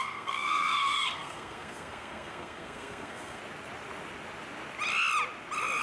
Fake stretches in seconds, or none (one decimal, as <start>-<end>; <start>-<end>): 0.0-3.4